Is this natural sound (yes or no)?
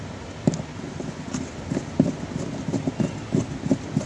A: yes